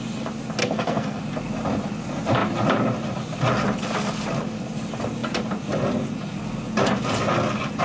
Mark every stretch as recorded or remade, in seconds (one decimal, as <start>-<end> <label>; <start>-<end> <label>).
0.0-0.6 recorded; 0.6-1.2 remade; 1.2-7.8 recorded